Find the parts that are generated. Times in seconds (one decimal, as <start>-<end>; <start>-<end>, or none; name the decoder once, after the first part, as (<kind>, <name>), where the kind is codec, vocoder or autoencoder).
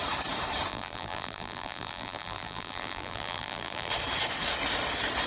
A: 0.7-3.9 (vocoder, BigVGAN v2)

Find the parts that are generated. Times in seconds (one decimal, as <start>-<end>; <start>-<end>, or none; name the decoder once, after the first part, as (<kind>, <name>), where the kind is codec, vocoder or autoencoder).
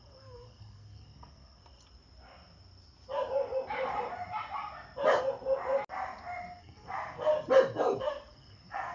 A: 0.0-1.6 (codec, SNAC); 6.6-7.3; 8.0-8.9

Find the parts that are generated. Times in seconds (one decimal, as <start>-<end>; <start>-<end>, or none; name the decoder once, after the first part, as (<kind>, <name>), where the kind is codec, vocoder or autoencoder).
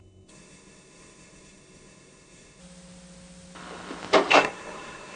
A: 0.0-2.6 (codec, SNAC); 4.3-5.2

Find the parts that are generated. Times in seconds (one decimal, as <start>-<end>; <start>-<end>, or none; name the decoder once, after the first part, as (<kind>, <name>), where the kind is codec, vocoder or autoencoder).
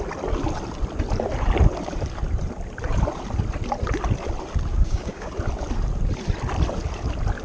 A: 4.7-5.3 (codec, DAC)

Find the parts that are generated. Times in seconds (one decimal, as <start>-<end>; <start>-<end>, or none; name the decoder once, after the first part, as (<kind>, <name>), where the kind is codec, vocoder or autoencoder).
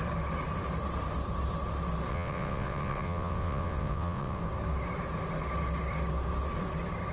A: 2.1-4.4 (vocoder, WaveNeXt)